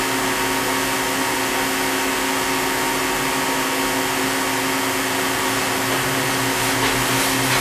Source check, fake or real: real